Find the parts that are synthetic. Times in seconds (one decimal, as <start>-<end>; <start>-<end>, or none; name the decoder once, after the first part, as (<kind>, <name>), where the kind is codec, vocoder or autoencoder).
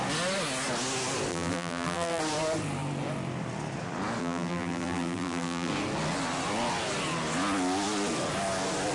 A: 1.3-2.2 (vocoder, BigVGAN v2); 4.2-5.7